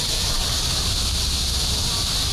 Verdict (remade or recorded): recorded